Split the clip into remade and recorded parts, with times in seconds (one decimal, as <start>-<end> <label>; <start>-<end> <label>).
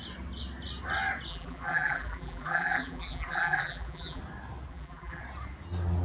0.0-1.3 recorded; 1.3-4.2 remade; 4.2-4.7 recorded; 4.7-5.2 remade; 5.2-6.0 recorded